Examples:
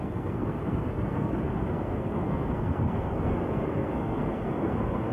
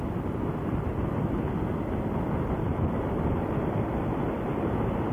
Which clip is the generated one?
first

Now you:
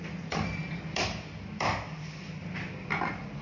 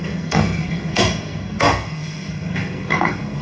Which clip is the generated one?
second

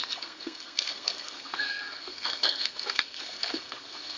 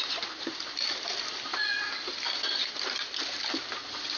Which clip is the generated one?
first